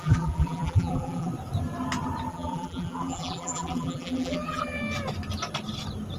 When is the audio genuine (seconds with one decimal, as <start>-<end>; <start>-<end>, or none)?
1.3-2.3; 4.8-6.2